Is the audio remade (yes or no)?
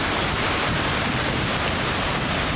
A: yes